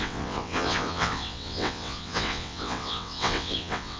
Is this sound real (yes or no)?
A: no